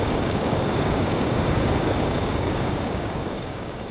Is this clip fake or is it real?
fake